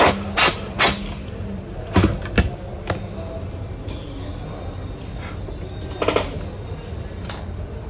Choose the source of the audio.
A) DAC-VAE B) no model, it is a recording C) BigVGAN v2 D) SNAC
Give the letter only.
B